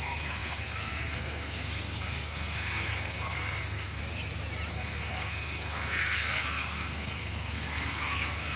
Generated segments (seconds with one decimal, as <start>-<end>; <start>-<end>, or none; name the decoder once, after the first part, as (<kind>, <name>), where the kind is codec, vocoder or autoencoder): 0.0-4.0 (codec, SNAC); 4.7-8.6